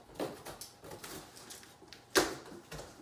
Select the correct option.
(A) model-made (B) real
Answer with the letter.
B